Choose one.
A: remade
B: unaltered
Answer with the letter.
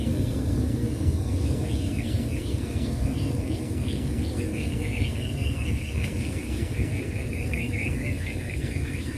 A